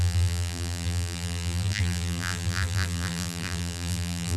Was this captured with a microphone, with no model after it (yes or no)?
no